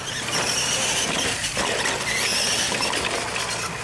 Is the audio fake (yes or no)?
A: no